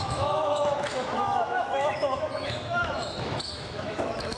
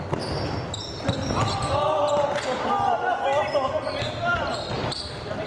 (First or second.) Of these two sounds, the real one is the second